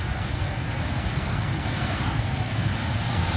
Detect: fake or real fake